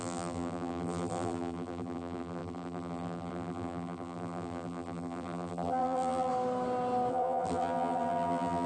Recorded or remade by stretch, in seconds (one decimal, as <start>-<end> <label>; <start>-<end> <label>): 0.0-6.3 remade; 6.3-7.1 recorded; 7.1-8.7 remade